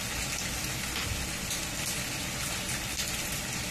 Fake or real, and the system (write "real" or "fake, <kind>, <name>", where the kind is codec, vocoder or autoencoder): real